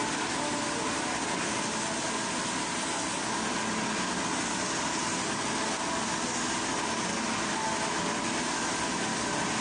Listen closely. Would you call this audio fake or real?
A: real